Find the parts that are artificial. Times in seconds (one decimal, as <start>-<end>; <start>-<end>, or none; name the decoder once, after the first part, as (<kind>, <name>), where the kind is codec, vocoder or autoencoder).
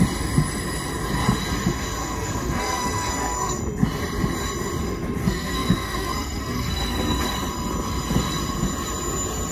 2.0-3.6 (codec, SNAC); 5.2-7.2